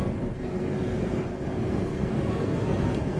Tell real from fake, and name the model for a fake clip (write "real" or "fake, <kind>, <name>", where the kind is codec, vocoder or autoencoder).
fake, codec, SNAC